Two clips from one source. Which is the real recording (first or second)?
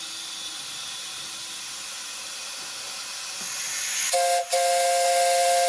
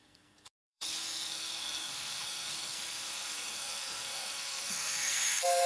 first